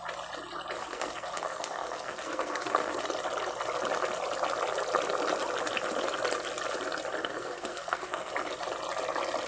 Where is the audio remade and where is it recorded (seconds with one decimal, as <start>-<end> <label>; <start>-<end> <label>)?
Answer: 0.0-0.8 recorded; 0.8-3.0 remade; 3.0-7.2 recorded; 7.2-8.3 remade; 8.3-9.5 recorded